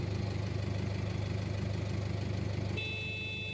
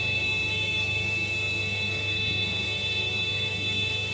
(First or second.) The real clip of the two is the first